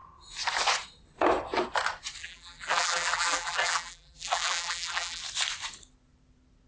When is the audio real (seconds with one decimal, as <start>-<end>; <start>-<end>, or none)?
0.0-2.2; 5.2-6.7